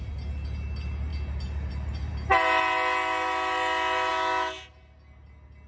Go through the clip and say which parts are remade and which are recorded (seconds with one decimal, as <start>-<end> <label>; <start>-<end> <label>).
0.0-5.7 recorded